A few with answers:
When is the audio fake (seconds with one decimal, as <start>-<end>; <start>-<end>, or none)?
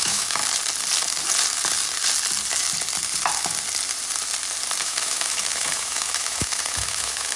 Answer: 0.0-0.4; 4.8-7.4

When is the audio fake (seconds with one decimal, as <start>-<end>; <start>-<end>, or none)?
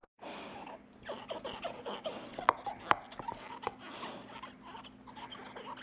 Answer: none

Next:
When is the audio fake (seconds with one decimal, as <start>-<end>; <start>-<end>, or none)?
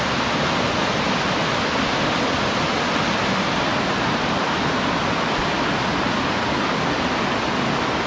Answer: 3.7-5.0